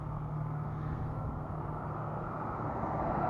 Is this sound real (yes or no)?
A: no